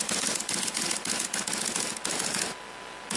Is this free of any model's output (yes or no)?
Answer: yes